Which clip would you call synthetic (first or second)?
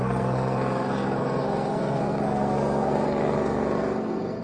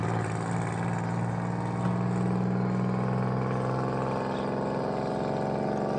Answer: first